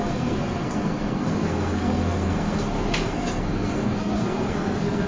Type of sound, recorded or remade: remade